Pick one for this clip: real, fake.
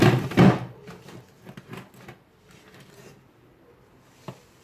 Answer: real